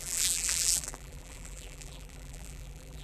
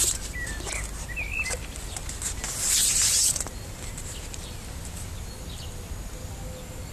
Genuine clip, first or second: second